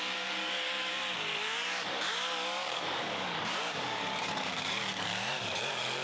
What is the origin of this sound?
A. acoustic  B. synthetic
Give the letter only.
B